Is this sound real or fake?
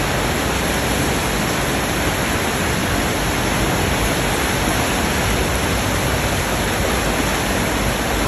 real